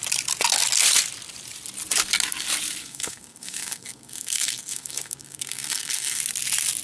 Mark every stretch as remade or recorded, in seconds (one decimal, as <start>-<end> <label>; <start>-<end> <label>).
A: 0.0-2.8 recorded; 2.8-6.2 remade; 6.2-6.8 recorded